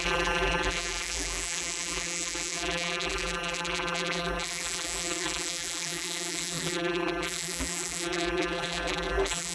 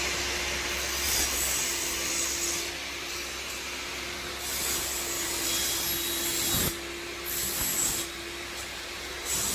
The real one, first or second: second